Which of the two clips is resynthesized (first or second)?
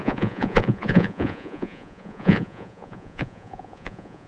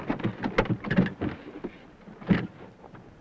first